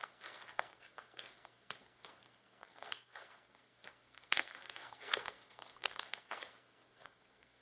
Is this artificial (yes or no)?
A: yes